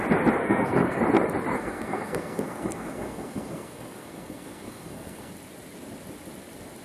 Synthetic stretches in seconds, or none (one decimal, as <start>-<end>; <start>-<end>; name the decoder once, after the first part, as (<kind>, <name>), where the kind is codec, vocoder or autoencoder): 0.4-1.0 (codec, SNAC); 1.5-5.3